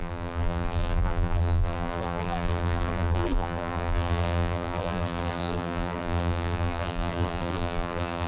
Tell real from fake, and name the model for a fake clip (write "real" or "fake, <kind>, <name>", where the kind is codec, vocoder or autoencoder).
fake, vocoder, BigVGAN v2